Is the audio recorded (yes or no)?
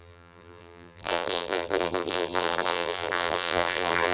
no